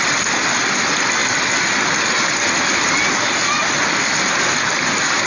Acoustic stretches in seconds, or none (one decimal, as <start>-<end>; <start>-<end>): 0.0-5.3